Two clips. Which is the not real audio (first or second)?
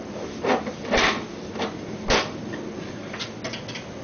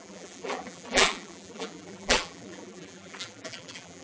second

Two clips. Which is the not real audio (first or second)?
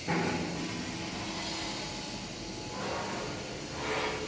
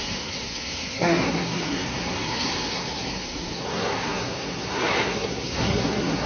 second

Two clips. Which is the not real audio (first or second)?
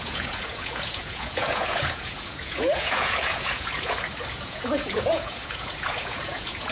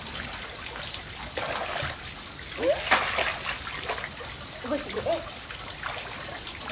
first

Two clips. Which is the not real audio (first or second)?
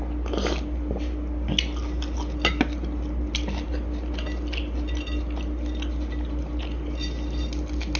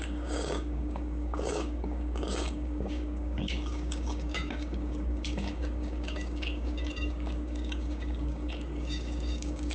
second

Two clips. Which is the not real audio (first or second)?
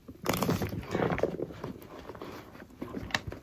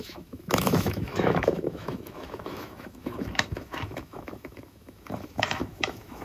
second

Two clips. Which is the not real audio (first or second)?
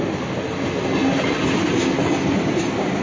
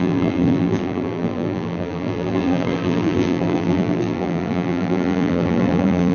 second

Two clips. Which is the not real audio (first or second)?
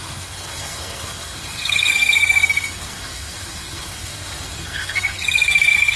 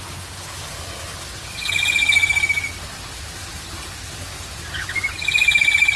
first